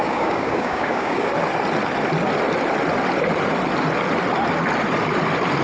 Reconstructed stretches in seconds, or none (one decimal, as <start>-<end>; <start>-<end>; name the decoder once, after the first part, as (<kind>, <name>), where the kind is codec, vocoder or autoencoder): 0.0-1.3 (codec, DAC)